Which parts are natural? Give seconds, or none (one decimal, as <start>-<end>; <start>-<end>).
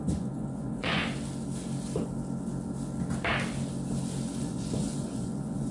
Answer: 1.0-4.4